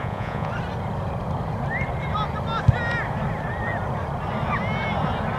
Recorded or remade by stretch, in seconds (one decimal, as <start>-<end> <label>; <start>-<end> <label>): 0.0-0.5 remade; 0.5-5.4 recorded